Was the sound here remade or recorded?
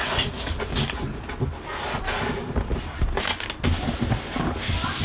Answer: recorded